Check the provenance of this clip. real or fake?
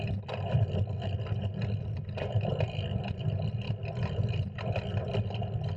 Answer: real